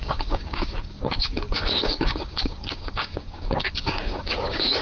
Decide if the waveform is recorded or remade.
remade